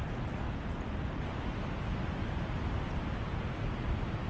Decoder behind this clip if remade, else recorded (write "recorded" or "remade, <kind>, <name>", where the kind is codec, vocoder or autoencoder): recorded